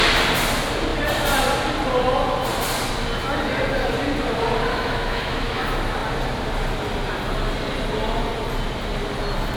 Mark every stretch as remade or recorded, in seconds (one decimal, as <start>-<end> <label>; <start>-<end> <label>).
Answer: 0.0-4.7 recorded; 4.7-5.6 remade; 5.6-9.6 recorded